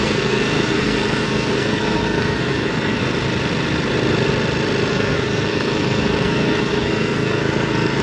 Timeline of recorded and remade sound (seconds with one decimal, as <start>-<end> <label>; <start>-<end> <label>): 0.0-3.0 remade; 3.0-4.9 recorded; 4.9-8.0 remade